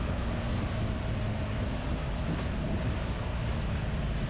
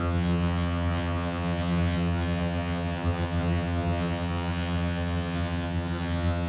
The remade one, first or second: second